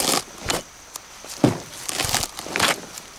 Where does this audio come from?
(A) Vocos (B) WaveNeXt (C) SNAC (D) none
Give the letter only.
D